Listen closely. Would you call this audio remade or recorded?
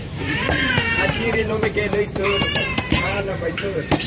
remade